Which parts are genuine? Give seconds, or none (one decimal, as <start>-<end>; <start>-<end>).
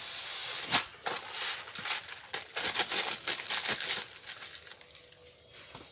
0.0-5.9